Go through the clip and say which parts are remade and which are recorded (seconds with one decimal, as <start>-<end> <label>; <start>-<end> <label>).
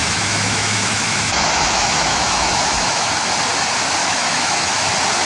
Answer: 0.0-3.1 remade; 3.1-4.0 recorded; 4.0-4.7 remade; 4.7-5.2 recorded